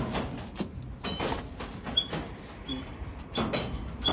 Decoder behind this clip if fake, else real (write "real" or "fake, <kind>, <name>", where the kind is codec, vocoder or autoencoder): real